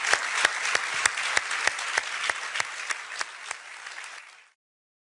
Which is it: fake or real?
real